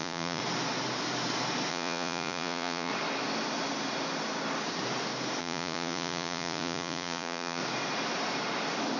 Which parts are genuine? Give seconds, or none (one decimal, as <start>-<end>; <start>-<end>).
0.4-1.7; 2.9-5.4; 7.6-9.0